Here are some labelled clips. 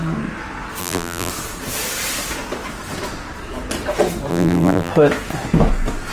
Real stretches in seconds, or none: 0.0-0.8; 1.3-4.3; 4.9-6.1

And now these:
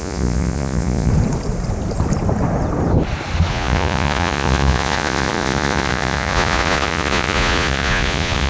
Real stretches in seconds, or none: 1.1-3.5

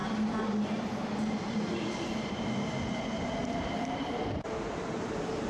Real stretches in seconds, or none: 2.3-3.4; 4.4-5.5

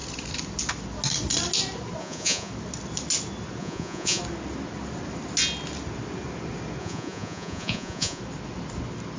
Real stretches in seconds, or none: 0.0-2.0; 2.5-3.6; 4.2-6.8; 8.2-9.2

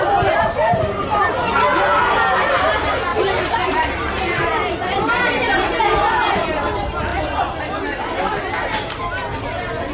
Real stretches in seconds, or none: 0.0-3.1; 5.8-9.9